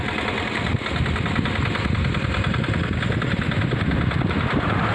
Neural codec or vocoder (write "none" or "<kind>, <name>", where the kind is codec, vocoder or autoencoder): none